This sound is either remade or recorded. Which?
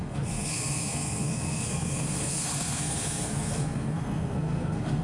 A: remade